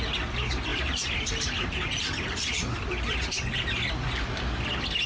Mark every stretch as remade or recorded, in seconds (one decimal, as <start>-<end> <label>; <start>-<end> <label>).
0.0-0.7 recorded; 0.7-3.8 remade; 3.8-5.1 recorded